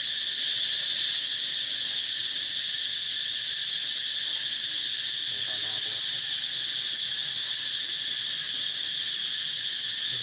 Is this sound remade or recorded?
recorded